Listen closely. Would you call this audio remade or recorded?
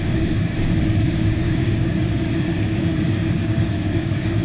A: remade